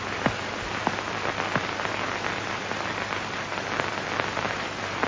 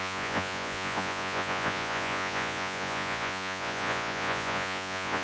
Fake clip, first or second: second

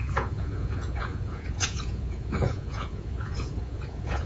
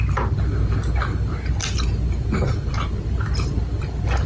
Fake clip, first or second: first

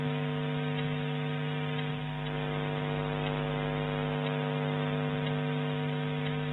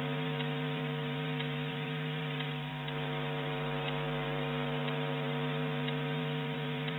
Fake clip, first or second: second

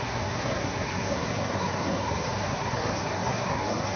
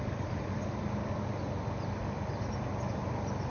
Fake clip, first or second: first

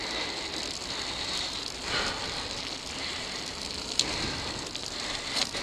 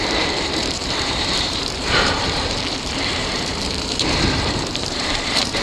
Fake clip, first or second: second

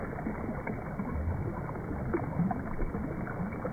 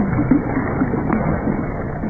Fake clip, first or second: second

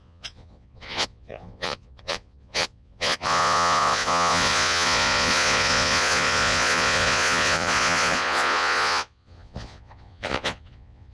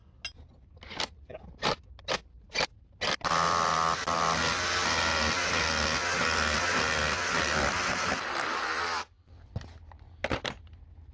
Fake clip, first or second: first